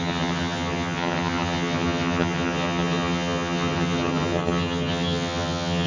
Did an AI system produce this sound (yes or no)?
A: yes